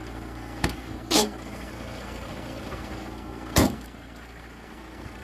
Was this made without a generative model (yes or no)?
no